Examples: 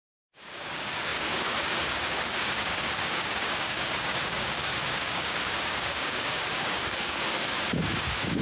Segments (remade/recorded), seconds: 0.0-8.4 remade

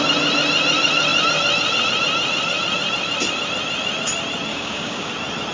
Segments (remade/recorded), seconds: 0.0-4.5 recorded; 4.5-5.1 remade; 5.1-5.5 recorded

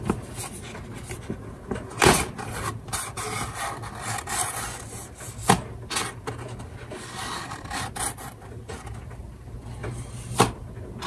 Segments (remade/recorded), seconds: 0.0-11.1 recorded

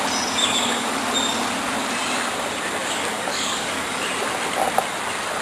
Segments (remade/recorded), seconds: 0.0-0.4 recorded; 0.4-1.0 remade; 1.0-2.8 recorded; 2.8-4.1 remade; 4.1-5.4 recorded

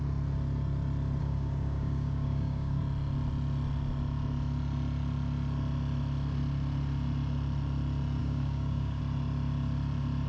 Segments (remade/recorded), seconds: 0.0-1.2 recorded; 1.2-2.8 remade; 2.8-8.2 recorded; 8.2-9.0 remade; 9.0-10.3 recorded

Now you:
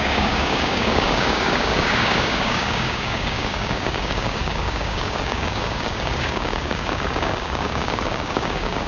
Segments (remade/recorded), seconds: 0.0-8.9 remade

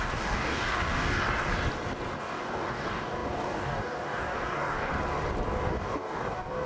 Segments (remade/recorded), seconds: 0.0-1.2 remade; 1.2-2.2 recorded; 2.2-4.9 remade; 4.9-5.7 recorded; 5.7-6.7 remade